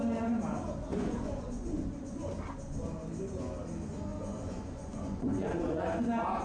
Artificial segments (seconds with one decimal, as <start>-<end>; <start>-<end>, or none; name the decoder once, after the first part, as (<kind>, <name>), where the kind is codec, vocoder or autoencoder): 0.9-2.3 (vocoder, Vocos); 4.1-6.0